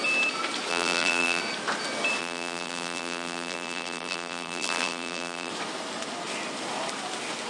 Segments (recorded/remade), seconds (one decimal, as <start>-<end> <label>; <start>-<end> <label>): 0.0-0.7 recorded; 0.7-1.4 remade; 1.4-2.2 recorded; 2.2-5.5 remade; 5.5-7.5 recorded

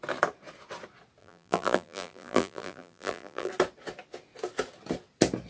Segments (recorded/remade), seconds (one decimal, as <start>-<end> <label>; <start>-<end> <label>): 0.0-1.2 recorded; 1.2-3.5 remade; 3.5-5.5 recorded

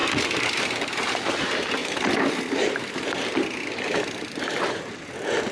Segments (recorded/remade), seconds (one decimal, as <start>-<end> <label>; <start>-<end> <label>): 0.0-0.6 remade; 0.6-1.8 recorded; 1.8-2.9 remade; 2.9-5.5 recorded

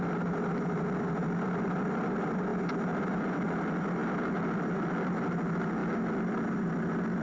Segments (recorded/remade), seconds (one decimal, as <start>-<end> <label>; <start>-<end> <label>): 0.0-7.2 recorded

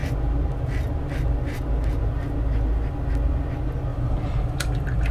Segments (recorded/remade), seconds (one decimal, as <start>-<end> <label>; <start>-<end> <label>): 0.0-3.9 recorded; 3.9-5.1 remade